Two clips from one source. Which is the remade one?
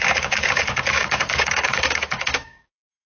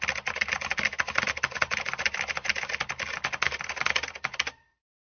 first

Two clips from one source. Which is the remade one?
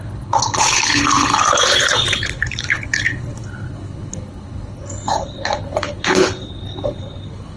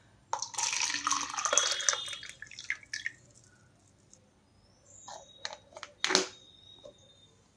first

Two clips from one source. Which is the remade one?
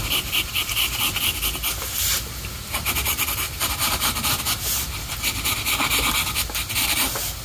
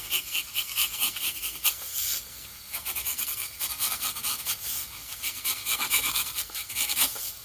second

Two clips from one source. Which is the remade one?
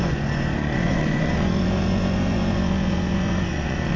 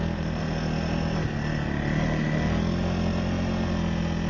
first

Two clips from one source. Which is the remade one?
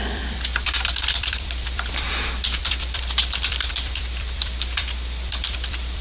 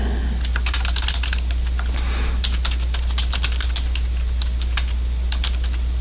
first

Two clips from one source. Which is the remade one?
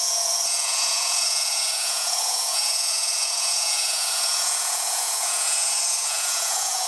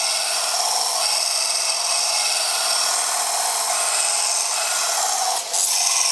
first